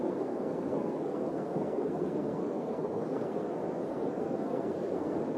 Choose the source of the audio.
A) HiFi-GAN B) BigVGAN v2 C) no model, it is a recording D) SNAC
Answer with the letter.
D